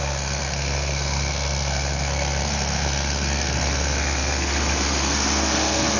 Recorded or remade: remade